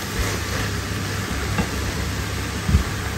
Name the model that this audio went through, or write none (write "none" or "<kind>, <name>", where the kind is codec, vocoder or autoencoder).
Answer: none